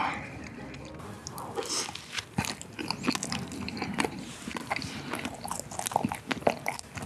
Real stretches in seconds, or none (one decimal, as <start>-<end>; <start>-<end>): 0.0-7.1